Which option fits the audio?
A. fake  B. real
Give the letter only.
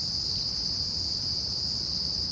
B